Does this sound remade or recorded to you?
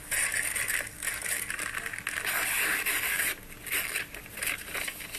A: recorded